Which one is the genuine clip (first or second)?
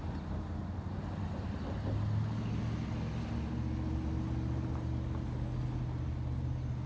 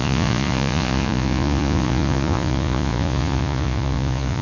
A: first